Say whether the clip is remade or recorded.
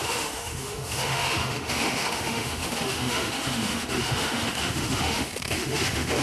remade